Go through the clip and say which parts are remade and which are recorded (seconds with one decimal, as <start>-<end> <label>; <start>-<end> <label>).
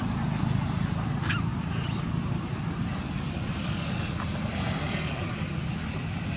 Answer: 0.0-6.4 recorded